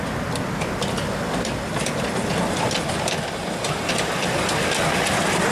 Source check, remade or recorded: recorded